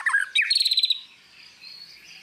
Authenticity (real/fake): fake